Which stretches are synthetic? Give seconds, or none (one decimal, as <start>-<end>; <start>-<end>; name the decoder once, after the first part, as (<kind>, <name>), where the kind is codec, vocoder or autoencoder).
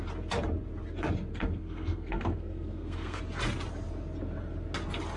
1.3-3.2 (codec, SNAC)